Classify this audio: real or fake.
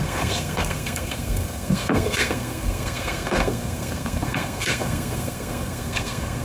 fake